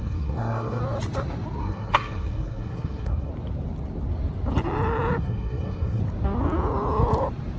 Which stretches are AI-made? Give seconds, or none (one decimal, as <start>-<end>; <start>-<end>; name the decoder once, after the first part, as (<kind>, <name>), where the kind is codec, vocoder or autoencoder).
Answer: 0.0-0.8 (codec, SNAC); 1.6-3.3; 5.2-6.0